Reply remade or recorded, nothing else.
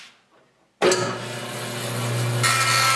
recorded